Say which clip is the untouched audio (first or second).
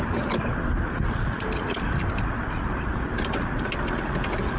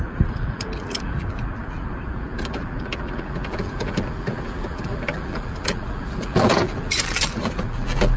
first